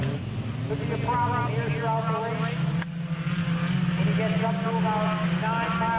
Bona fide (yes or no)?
yes